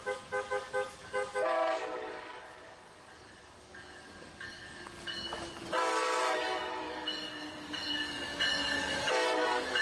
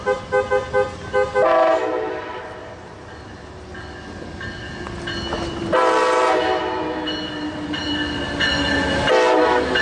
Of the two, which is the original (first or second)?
second